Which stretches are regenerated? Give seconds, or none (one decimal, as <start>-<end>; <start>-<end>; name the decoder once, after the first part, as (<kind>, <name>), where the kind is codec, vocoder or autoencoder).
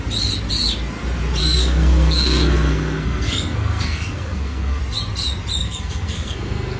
1.4-4.8 (codec, SNAC); 5.6-6.8